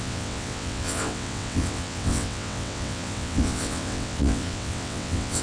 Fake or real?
fake